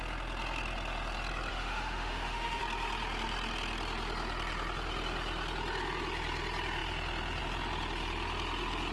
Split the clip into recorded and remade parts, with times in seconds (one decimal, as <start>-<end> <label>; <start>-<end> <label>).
0.0-1.5 recorded; 1.5-2.6 remade; 2.6-8.9 recorded